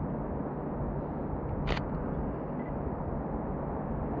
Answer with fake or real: real